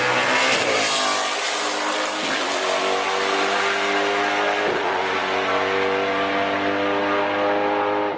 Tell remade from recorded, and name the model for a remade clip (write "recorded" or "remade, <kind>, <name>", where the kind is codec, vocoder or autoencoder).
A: recorded